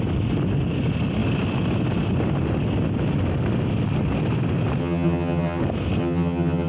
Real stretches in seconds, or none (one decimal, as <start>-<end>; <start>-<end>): 0.0-4.8; 5.6-6.0